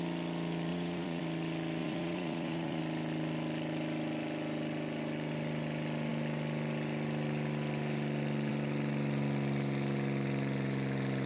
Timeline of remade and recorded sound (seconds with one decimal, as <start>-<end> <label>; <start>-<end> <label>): 0.0-0.7 recorded; 0.7-1.2 remade; 1.2-1.8 recorded; 1.8-2.8 remade; 2.8-11.3 recorded